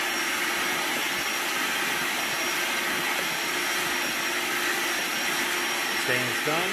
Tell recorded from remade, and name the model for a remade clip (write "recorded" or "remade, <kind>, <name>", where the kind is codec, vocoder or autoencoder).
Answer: recorded